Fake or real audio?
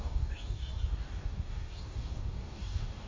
fake